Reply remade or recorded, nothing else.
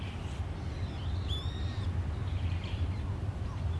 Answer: recorded